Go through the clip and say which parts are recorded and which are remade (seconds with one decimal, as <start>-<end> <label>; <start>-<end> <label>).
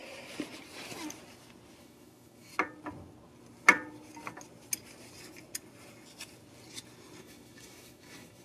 0.0-1.8 recorded; 1.8-2.5 remade; 2.5-7.2 recorded; 7.2-8.4 remade